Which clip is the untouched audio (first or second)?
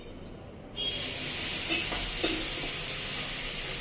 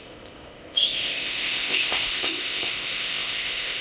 first